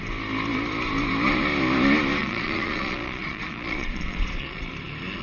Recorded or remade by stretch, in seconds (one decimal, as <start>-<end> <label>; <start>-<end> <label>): 0.0-2.2 recorded; 2.2-4.7 remade; 4.7-5.2 recorded